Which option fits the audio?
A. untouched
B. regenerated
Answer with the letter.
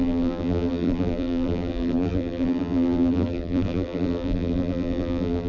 B